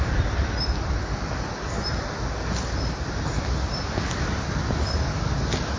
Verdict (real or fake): real